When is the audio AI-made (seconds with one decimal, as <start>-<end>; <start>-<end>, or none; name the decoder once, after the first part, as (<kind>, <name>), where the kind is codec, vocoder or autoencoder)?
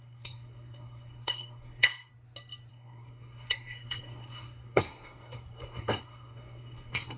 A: 0.0-2.1 (codec, SNAC); 2.7-7.2